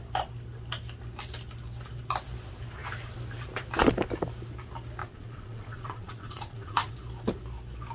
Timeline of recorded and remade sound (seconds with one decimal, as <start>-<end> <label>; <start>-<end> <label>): 0.0-5.0 recorded; 5.0-6.9 remade; 6.9-7.9 recorded